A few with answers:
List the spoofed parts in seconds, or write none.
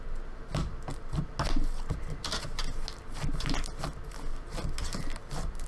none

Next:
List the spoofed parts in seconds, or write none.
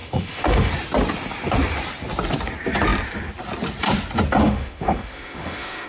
0.0-0.7 (autoencoder, DAC-VAE); 4.4-5.9